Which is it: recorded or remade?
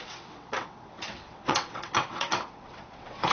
remade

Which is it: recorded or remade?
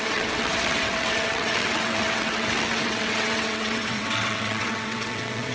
remade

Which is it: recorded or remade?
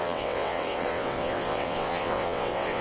remade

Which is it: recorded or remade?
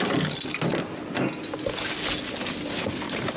recorded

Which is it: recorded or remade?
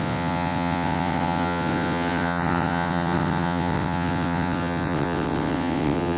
remade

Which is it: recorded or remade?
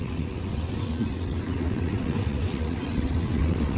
remade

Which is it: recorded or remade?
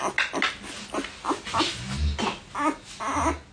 recorded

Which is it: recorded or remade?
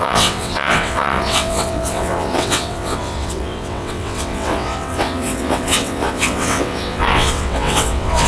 remade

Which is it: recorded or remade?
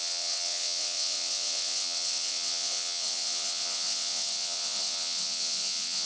remade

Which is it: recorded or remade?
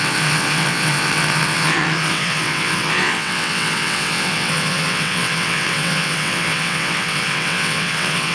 remade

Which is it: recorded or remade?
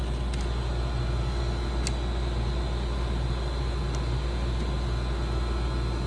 recorded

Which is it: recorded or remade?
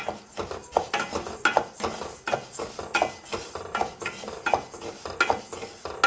recorded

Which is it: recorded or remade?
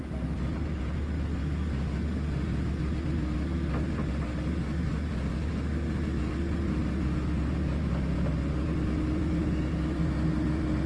recorded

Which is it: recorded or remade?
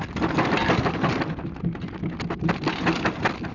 recorded